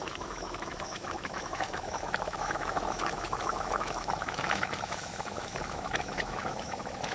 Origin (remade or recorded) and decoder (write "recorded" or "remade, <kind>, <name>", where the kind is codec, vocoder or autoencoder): remade, autoencoder, DAC-VAE